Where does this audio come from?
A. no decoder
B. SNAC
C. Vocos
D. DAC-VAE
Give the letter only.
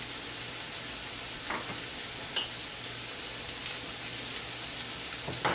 A